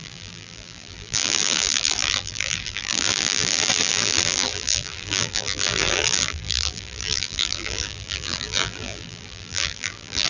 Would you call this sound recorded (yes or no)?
no